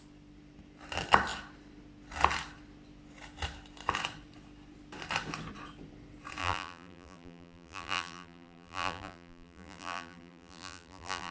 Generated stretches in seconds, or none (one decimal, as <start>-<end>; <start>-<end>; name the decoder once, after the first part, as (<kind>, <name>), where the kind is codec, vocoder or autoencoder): 6.4-11.3 (vocoder, BigVGAN v2)